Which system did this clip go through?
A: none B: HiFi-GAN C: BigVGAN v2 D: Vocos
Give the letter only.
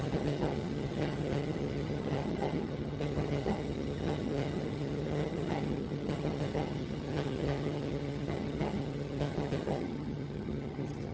B